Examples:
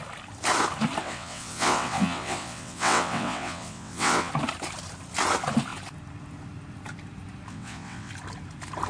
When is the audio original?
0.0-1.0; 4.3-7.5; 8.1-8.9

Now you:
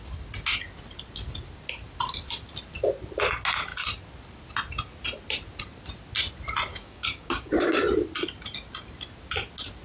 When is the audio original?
0.0-6.7; 7.8-9.8

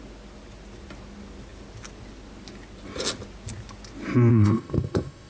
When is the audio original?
0.0-4.3

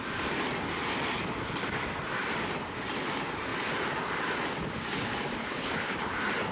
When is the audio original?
0.0-5.4; 6.1-6.5

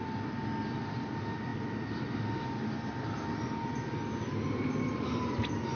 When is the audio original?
0.0-5.8

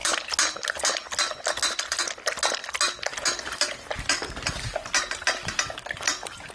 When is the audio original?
0.0-6.5